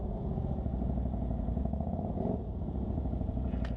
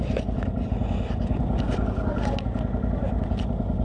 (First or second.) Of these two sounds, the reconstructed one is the first